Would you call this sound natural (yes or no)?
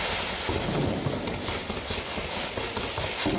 yes